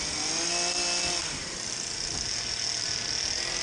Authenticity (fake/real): real